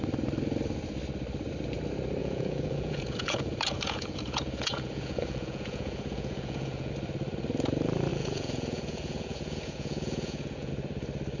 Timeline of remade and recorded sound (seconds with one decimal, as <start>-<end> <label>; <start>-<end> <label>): 0.0-2.2 recorded; 2.2-6.9 remade; 6.9-8.1 recorded; 8.1-10.7 remade; 10.7-11.4 recorded